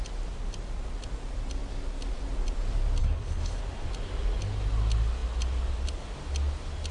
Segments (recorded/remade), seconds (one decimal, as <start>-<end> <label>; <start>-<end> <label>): 0.0-3.0 recorded; 3.0-3.6 remade; 3.6-6.9 recorded